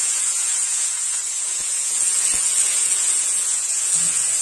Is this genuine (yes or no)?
no